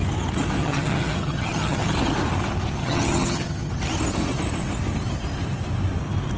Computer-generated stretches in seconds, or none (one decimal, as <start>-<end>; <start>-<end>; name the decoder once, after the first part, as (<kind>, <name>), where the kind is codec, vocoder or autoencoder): 0.6-1.9 (vocoder, HiFi-GAN); 2.8-3.7

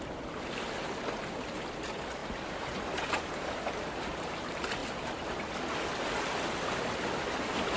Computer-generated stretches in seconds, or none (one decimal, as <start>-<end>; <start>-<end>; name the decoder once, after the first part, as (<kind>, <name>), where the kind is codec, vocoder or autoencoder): none

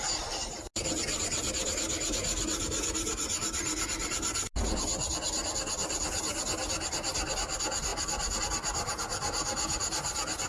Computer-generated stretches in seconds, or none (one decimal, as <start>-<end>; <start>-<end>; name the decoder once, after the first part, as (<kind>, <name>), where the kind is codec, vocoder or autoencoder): none